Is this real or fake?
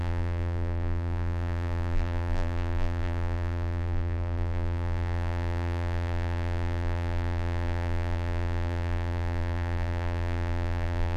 fake